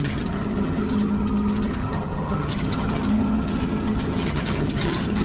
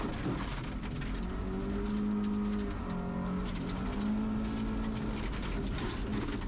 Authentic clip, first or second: second